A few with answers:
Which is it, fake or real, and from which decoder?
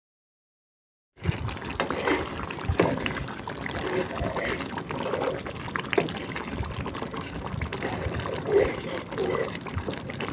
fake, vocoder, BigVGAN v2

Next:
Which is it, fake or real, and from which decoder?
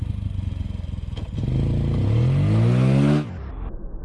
real